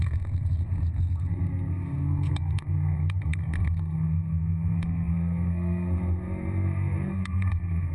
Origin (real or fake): fake